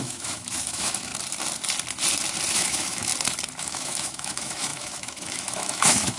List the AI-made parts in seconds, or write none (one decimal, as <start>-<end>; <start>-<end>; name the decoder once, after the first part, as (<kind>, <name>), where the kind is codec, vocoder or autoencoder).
0.0-1.1 (autoencoder, DAC-VAE); 2.5-3.1; 3.6-6.2